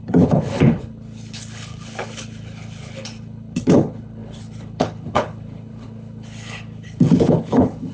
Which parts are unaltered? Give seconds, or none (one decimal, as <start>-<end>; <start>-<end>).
none

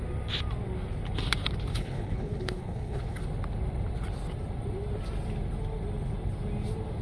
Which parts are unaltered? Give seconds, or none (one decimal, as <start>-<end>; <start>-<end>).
0.0-1.7; 3.2-7.0

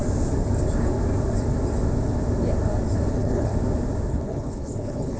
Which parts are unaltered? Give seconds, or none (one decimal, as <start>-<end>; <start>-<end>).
0.0-3.1; 3.5-4.1

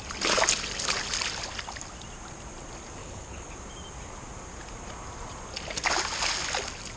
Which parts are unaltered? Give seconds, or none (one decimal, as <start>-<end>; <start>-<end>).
0.0-3.0; 3.5-7.0